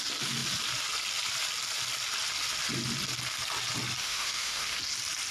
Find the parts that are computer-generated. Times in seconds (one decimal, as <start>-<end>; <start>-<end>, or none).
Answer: 4.0-4.8